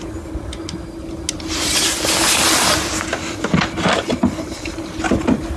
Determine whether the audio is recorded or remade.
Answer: recorded